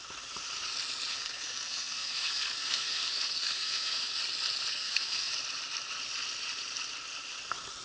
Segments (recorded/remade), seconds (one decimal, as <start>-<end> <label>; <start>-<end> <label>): 0.0-1.1 recorded; 1.1-4.2 remade; 4.2-4.7 recorded; 4.7-5.3 remade; 5.3-7.8 recorded